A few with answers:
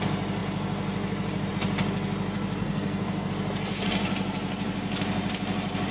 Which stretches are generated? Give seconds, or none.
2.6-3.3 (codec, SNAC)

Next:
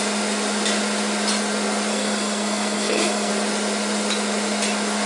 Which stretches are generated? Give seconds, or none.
1.9-3.3 (codec, SNAC)

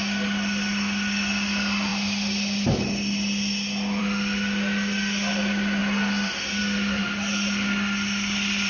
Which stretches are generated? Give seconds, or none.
none

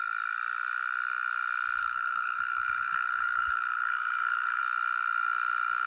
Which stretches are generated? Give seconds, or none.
1.8-4.6 (codec, SNAC)

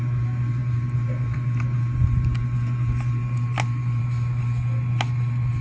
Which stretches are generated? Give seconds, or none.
none

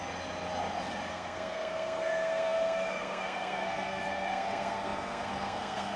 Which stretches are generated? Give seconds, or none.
1.1-6.0 (codec, SNAC)

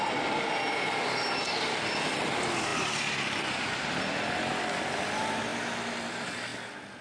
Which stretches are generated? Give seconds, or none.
none